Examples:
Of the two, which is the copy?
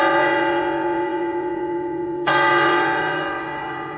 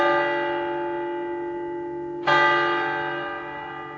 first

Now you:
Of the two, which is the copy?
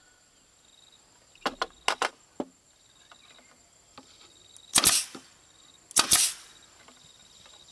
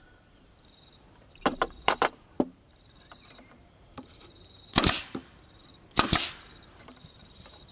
second